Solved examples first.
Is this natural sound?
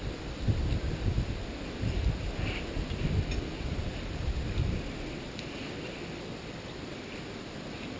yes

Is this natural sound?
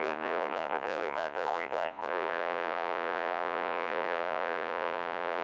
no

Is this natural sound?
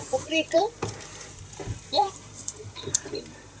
no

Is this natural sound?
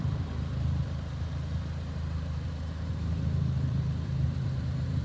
no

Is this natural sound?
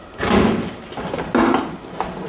yes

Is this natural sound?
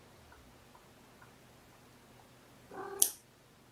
yes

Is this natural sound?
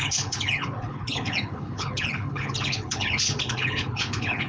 no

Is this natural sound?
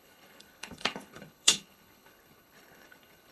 no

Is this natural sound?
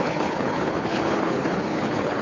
no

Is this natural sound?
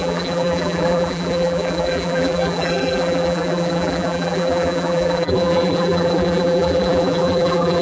no